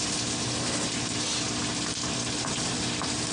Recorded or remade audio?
remade